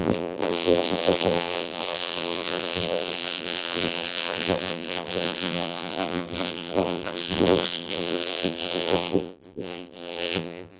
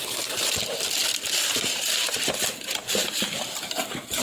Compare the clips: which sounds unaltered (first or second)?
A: second